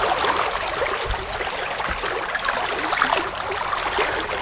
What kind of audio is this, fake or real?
real